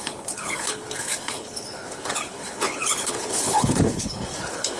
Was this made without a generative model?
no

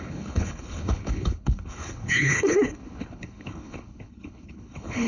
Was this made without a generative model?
no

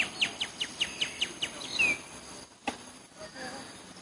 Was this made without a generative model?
yes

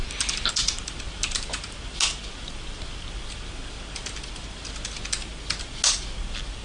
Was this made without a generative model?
yes